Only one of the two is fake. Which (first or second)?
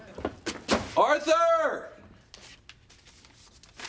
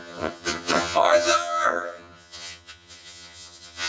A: second